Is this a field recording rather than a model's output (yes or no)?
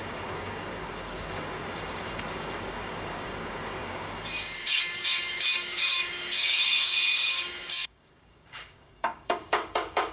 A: no